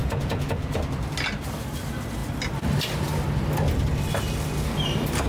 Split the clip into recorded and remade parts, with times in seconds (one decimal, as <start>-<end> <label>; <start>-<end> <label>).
0.0-0.8 remade; 0.8-5.3 recorded